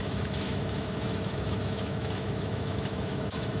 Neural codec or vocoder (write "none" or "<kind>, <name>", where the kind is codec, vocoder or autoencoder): autoencoder, DAC-VAE